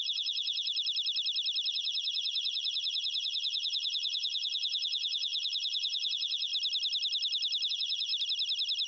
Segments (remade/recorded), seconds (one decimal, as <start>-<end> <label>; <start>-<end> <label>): 0.0-0.7 remade; 0.7-1.7 recorded; 1.7-6.5 remade; 6.5-7.7 recorded; 7.7-8.1 remade; 8.1-8.9 recorded